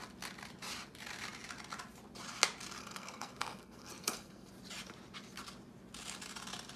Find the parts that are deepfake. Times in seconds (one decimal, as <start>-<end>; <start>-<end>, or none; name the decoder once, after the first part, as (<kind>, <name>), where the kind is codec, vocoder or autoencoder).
2.8-4.5 (codec, SNAC)